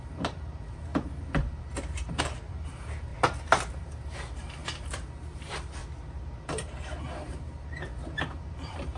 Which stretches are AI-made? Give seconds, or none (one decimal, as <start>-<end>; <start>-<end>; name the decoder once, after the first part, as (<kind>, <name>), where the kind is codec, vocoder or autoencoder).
0.0-3.1 (vocoder, BigVGAN v2); 3.7-5.8; 6.4-9.0